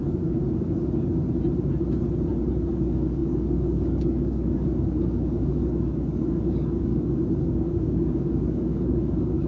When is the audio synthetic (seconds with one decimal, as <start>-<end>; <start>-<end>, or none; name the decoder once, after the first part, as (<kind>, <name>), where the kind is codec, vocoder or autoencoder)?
0.0-0.4 (codec, DAC); 2.7-9.5